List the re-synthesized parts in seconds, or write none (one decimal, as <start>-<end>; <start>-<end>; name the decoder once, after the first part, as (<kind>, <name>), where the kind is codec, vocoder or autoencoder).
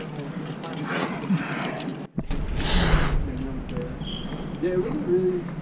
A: 0.7-1.4 (vocoder, Vocos)